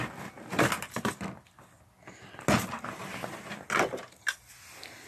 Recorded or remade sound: recorded